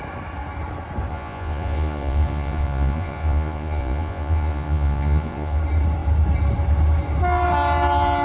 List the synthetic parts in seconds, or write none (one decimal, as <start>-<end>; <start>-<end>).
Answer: 1.1-5.6